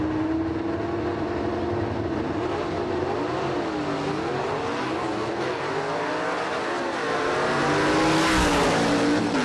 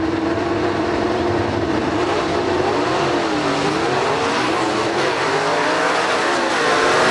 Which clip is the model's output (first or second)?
second